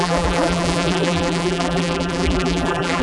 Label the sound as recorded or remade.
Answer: remade